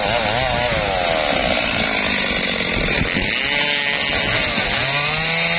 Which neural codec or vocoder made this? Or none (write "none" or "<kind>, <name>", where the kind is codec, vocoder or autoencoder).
none